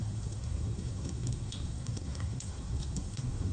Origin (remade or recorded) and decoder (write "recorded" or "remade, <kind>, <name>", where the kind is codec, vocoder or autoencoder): remade, codec, SNAC